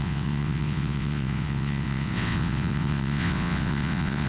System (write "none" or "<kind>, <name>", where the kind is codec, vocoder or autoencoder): vocoder, WaveNeXt